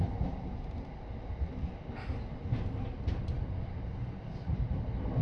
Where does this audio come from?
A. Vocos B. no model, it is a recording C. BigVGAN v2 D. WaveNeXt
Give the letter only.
B